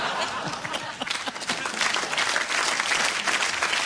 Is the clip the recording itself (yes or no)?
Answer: yes